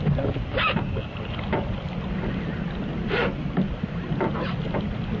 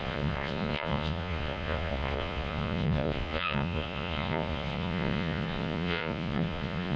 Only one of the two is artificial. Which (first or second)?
second